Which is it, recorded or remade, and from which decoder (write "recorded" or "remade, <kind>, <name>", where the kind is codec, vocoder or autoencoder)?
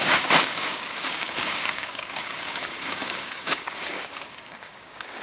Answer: remade, codec, DAC